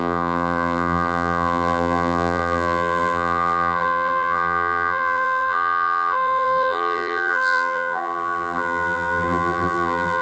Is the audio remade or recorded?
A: remade